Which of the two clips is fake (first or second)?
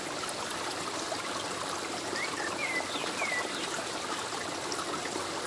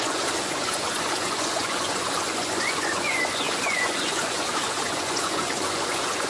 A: second